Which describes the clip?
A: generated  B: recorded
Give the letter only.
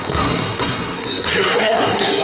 A